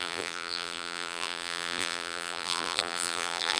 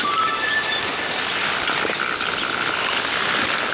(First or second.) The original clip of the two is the second